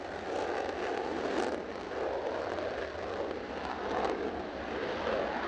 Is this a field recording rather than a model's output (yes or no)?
yes